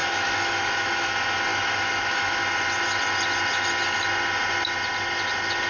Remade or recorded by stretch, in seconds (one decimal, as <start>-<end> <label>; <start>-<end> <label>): 0.0-1.1 remade; 1.1-1.5 recorded; 1.5-2.4 remade; 2.4-5.7 recorded